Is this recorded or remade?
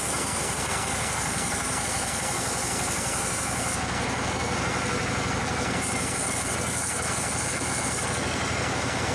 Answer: remade